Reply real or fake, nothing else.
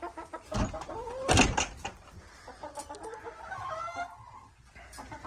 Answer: real